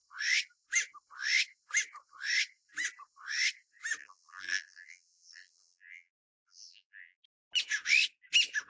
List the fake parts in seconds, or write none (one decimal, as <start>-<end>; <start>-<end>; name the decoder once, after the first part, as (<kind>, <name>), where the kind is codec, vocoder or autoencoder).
4.0-7.2 (vocoder, BigVGAN v2)